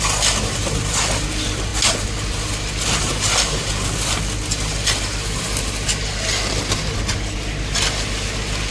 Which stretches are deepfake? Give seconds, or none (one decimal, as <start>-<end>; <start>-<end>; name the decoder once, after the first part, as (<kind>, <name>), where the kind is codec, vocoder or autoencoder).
none